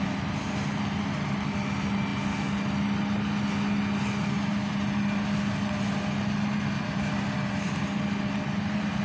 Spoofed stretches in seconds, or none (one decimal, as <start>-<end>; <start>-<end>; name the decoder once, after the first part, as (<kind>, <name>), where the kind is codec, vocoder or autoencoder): none